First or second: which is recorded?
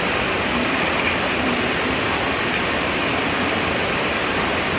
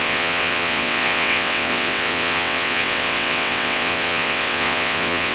first